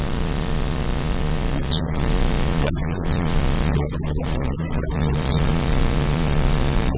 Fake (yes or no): yes